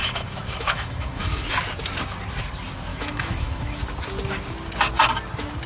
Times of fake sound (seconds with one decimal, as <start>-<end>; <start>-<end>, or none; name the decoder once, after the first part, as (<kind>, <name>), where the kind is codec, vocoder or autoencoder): 0.0-1.5 (autoencoder, DAC-VAE); 2.9-3.8